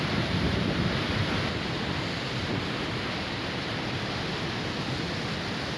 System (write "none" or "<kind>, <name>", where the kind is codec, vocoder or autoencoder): none